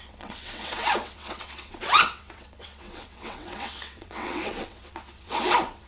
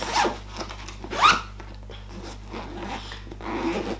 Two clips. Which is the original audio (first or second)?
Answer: second